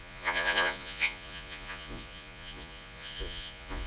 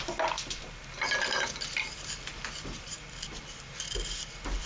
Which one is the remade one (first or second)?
first